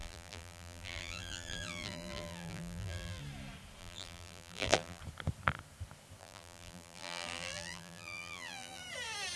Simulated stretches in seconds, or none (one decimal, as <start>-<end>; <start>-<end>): 0.0-3.2; 3.8-5.0; 6.2-8.8